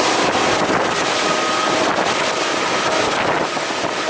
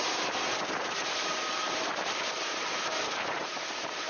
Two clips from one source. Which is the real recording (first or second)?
first